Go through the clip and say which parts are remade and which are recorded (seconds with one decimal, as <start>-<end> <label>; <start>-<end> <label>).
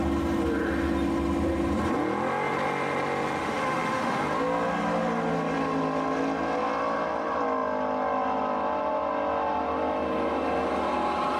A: 0.0-3.4 recorded; 3.4-4.2 remade; 4.2-11.4 recorded